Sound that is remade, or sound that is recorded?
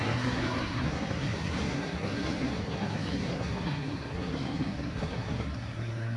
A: remade